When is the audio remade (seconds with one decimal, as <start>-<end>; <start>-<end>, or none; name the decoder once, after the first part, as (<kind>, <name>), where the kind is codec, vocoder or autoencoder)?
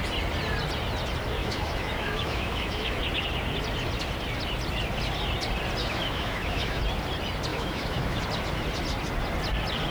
1.4-3.0 (autoencoder, DAC-VAE); 5.8-6.8; 7.5-8.2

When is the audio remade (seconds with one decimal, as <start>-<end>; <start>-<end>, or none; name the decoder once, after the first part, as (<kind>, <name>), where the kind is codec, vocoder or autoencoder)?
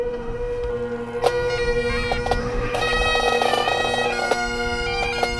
0.0-0.7 (autoencoder, DAC-VAE); 2.4-2.8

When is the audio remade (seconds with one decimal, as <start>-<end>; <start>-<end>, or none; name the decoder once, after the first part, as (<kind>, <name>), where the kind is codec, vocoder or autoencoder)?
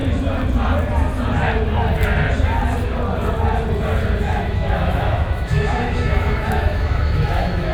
4.2-7.7 (autoencoder, DAC-VAE)